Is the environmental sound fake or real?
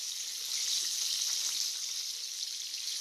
real